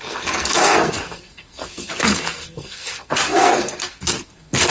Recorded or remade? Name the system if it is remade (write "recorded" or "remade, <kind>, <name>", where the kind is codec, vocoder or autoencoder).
remade, codec, SNAC